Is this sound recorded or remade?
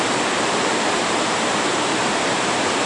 remade